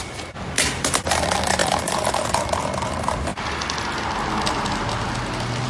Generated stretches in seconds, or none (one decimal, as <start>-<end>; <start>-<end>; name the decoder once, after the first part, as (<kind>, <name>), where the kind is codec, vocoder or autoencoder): 1.6-2.6 (vocoder, BigVGAN v2)